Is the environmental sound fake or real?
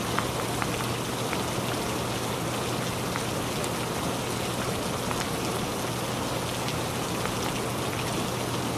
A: real